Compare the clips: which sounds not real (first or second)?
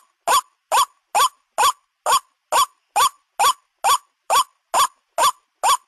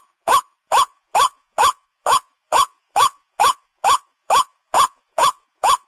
second